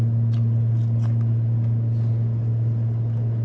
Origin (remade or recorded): recorded